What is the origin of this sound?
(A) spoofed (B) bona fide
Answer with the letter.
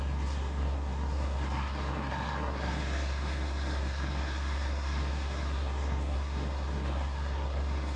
A